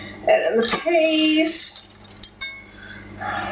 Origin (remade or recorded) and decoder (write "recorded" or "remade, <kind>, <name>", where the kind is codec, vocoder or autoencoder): recorded